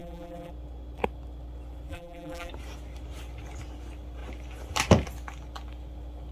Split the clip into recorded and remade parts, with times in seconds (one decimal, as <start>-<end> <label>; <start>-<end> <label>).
0.0-0.5 remade; 0.5-1.9 recorded; 1.9-2.5 remade; 2.5-6.3 recorded